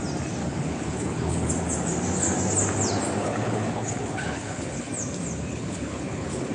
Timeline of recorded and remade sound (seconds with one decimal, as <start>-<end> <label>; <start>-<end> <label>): 0.0-0.4 recorded; 0.4-1.5 remade; 1.5-3.2 recorded; 3.2-4.9 remade; 4.9-5.5 recorded; 5.5-6.5 remade